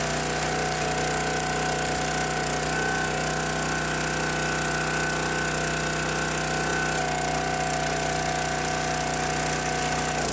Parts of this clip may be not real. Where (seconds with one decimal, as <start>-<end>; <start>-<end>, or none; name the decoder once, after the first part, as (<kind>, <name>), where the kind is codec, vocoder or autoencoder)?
none

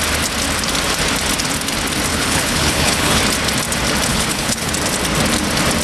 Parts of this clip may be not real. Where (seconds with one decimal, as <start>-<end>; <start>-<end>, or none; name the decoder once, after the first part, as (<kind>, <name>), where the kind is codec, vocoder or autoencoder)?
2.1-3.2 (codec, HILCodec); 4.1-4.7

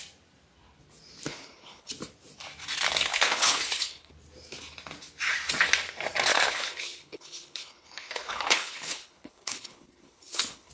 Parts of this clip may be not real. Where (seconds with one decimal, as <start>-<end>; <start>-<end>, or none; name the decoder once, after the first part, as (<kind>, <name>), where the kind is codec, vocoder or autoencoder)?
1.3-1.9 (codec, HILCodec); 3.1-4.1; 6.3-10.7

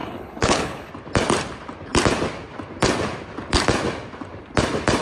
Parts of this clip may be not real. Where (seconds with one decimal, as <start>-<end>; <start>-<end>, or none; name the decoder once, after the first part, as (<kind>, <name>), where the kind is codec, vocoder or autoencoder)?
0.0-0.9 (codec, HILCodec)

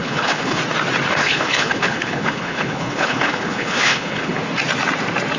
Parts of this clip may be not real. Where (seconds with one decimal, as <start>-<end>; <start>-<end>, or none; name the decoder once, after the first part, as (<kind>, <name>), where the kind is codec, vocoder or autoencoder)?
0.0-0.6 (codec, HILCodec); 1.2-4.4